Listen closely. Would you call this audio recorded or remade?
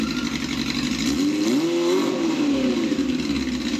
recorded